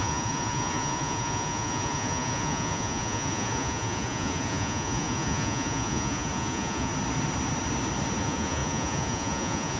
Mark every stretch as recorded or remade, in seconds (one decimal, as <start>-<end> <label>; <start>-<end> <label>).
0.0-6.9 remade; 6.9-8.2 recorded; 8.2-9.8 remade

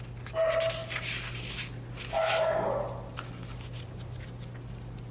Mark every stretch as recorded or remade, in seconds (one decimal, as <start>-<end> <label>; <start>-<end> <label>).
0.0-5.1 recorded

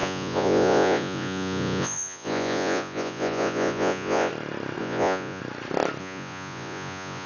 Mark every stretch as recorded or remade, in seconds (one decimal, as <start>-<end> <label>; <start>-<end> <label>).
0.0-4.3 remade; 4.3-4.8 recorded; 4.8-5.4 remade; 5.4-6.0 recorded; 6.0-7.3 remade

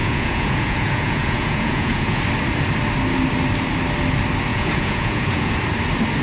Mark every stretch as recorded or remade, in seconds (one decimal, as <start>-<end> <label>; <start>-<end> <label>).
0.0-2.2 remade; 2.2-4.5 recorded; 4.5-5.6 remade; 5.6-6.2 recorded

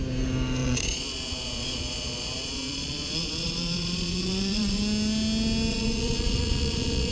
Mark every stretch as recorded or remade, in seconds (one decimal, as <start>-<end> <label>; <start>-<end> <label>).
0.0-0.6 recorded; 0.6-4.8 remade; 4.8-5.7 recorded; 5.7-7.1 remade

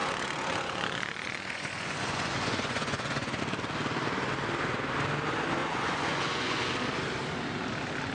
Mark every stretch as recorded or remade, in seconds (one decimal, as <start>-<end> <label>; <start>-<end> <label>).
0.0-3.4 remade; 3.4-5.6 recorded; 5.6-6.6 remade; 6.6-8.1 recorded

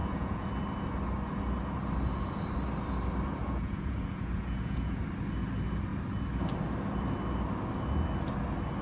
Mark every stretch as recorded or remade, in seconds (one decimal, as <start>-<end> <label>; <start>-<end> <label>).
0.0-0.5 remade; 0.5-3.4 recorded; 3.4-5.0 remade; 5.0-8.8 recorded